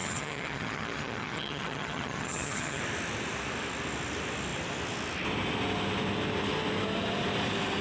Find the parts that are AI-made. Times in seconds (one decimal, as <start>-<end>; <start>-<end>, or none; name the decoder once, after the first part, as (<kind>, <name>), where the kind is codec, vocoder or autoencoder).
0.0-2.8 (vocoder, HiFi-GAN)